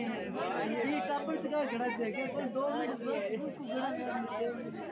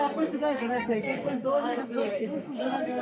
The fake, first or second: second